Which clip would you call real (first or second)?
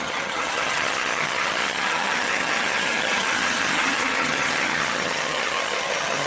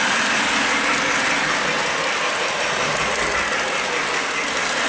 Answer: second